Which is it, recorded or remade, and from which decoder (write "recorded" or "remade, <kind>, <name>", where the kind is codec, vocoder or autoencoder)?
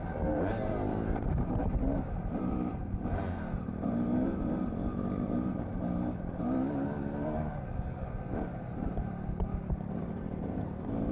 remade, vocoder, BigVGAN v2